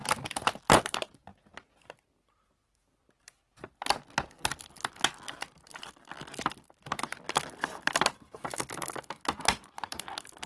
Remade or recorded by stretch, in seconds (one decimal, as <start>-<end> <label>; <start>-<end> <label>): 0.0-0.8 recorded; 0.8-1.3 remade; 1.3-5.8 recorded; 5.8-10.5 remade